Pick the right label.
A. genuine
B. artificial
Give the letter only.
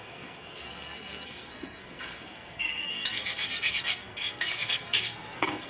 B